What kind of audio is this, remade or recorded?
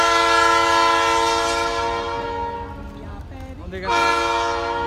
recorded